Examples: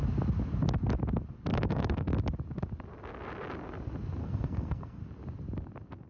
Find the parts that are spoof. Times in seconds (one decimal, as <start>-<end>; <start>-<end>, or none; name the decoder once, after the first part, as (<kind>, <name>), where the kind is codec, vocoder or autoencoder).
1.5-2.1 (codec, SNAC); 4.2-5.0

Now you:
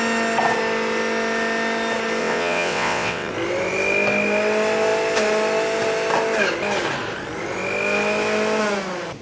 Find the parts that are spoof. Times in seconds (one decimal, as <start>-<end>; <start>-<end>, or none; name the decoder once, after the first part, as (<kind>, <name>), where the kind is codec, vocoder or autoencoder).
2.2-3.3 (vocoder, WaveNeXt)

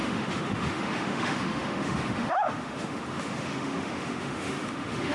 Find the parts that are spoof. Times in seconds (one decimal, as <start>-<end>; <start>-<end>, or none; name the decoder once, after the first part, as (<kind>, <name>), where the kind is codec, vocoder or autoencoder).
0.0-5.1 (autoencoder, DAC-VAE)